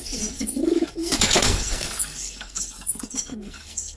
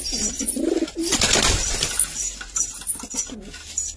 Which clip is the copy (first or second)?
first